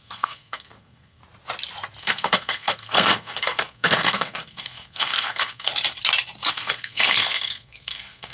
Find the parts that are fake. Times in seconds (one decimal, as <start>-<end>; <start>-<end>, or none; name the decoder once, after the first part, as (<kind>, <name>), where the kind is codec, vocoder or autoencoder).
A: 0.0-1.2 (codec, SNAC); 2.0-5.7; 6.5-8.3